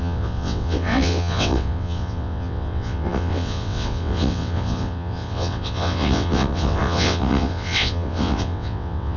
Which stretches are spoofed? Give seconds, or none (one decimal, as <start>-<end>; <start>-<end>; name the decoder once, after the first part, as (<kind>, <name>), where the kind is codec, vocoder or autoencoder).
0.0-9.2 (vocoder, WaveNeXt)